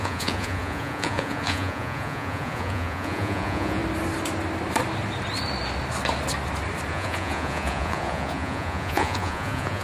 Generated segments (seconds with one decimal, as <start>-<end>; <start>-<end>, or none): 0.0-3.8; 6.9-9.8